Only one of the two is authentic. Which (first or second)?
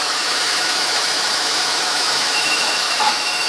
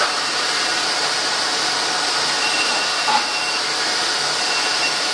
second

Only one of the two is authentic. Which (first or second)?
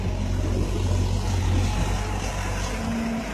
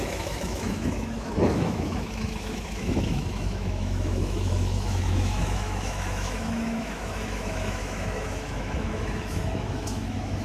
first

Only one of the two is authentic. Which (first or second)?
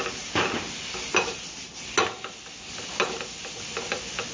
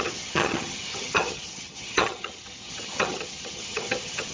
first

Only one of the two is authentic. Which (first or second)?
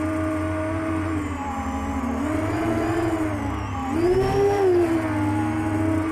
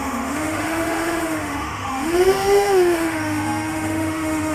first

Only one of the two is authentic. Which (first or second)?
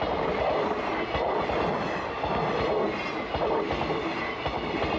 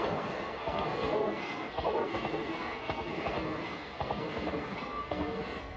first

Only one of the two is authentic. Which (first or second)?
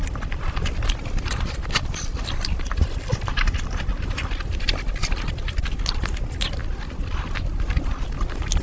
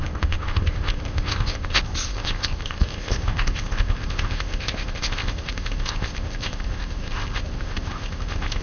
first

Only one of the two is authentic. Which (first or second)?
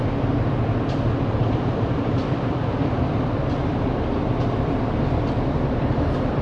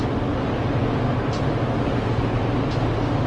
second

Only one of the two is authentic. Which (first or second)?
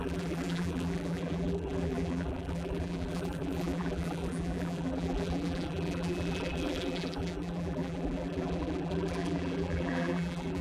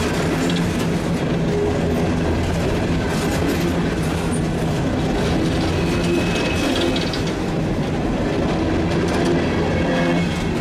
second